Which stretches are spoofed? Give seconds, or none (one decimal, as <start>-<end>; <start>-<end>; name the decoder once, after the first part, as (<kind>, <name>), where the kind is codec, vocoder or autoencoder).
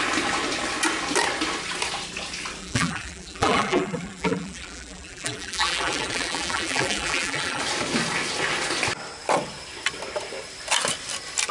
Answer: 2.6-7.6 (vocoder, BigVGAN v2)